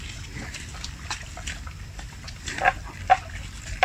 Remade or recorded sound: recorded